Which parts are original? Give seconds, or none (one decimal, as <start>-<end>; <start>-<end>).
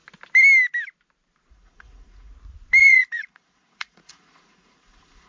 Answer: 0.0-1.5; 2.3-2.8